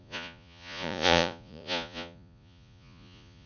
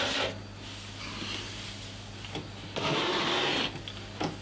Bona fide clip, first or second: second